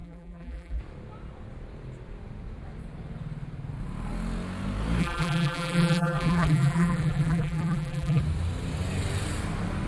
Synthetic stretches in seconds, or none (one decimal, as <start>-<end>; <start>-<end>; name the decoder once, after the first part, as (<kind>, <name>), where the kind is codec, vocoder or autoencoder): 0.0-0.8 (vocoder, BigVGAN v2); 5.0-8.2

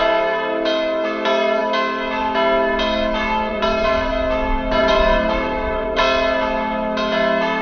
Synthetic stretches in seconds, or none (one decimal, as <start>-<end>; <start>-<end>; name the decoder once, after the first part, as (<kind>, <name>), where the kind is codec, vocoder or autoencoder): 3.5-4.1 (vocoder, BigVGAN v2); 4.8-6.0

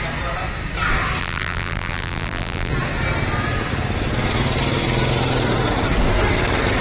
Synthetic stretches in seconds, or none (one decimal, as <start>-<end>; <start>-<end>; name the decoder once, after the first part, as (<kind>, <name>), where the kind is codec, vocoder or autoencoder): 1.2-2.7 (vocoder, BigVGAN v2)

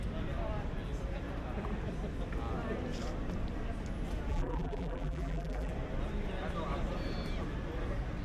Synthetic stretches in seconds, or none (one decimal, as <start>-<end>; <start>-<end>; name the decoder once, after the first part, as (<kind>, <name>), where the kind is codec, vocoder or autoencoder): 4.3-5.7 (vocoder, BigVGAN v2)

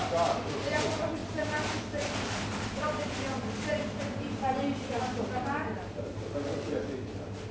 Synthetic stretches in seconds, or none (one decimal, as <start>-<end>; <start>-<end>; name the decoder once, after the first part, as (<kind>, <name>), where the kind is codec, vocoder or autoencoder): 1.2-1.8 (vocoder, BigVGAN v2)

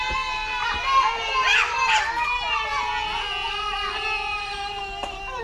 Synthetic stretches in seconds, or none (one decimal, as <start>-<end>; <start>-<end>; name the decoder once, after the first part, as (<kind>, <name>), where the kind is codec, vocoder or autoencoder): 0.6-2.0 (vocoder, BigVGAN v2); 3.4-5.4